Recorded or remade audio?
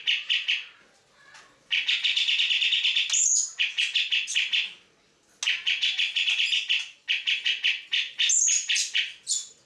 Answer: recorded